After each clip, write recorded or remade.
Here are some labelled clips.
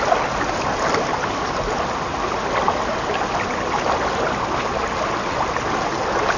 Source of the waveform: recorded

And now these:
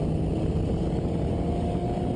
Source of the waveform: recorded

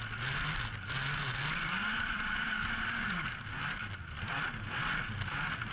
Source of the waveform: recorded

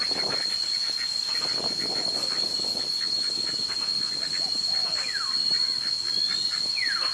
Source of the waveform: recorded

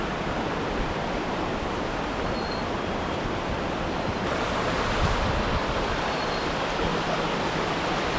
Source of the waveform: remade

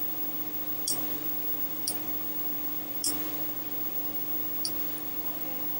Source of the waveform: remade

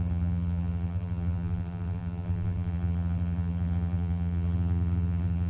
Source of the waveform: remade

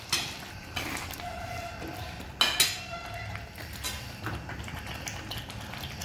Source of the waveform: recorded